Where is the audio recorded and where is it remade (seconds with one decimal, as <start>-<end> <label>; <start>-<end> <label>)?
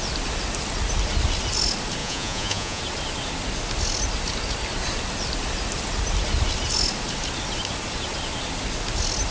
0.0-2.0 recorded; 2.0-2.8 remade; 2.8-9.3 recorded